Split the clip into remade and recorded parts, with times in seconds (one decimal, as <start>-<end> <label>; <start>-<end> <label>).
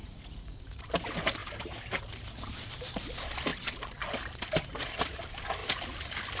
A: 0.0-0.8 remade; 0.8-6.4 recorded